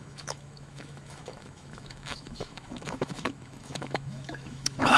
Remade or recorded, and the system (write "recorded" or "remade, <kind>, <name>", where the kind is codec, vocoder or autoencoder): remade, autoencoder, DAC-VAE